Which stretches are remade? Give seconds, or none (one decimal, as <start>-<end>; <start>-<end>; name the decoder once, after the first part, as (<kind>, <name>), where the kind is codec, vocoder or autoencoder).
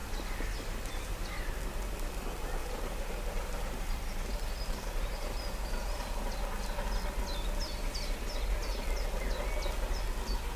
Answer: 2.6-5.4 (vocoder, BigVGAN v2)